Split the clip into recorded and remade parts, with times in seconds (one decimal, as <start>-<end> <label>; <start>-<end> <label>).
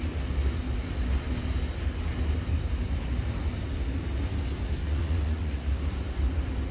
0.0-4.8 recorded; 4.8-5.7 remade; 5.7-6.7 recorded